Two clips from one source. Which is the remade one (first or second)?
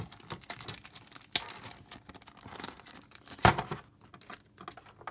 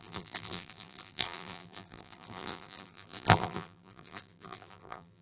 second